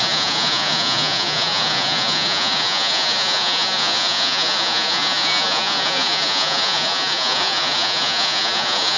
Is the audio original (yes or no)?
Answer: no